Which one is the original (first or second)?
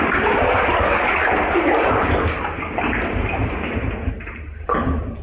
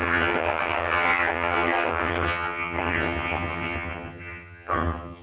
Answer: first